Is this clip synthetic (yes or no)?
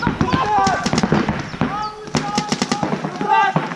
no